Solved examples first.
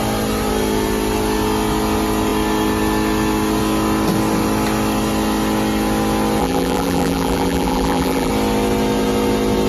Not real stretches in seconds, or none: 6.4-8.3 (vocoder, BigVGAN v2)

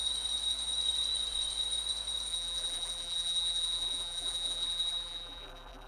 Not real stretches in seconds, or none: 2.3-5.9 (vocoder, BigVGAN v2)

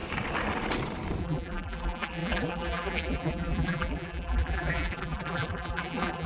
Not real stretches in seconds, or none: 1.2-6.3 (vocoder, BigVGAN v2)

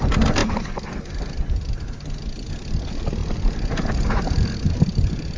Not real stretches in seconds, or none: none